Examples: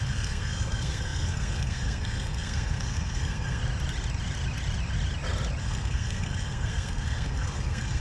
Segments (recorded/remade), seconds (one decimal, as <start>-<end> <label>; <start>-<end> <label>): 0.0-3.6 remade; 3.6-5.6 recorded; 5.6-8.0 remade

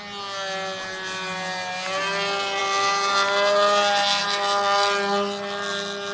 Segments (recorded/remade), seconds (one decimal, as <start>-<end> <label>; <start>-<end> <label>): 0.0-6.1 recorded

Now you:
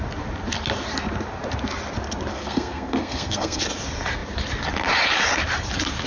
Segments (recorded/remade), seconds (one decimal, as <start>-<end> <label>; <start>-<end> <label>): 0.0-2.3 recorded; 2.3-3.6 remade; 3.6-6.1 recorded